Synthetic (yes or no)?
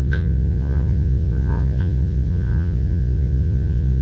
yes